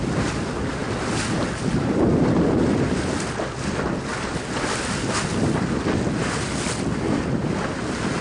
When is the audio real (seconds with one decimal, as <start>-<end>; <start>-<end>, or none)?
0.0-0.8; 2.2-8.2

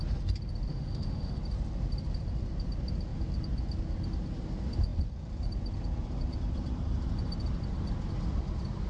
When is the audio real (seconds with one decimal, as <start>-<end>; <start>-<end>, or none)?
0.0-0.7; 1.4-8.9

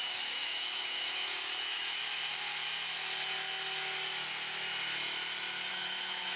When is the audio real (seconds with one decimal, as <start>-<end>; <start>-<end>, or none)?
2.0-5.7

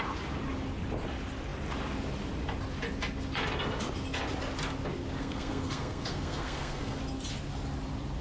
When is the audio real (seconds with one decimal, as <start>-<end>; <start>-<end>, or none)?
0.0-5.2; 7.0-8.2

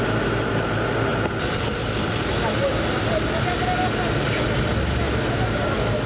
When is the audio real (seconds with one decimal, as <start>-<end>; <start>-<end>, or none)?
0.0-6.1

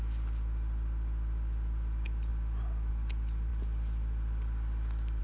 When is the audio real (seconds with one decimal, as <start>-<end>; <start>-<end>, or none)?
0.0-5.2